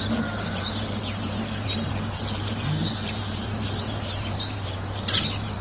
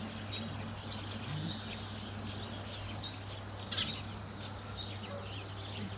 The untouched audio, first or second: second